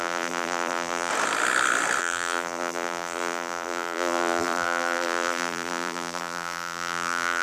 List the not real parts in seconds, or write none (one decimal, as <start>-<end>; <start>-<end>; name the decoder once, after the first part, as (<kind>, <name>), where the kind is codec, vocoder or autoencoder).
0.0-1.1 (vocoder, BigVGAN v2); 2.0-7.4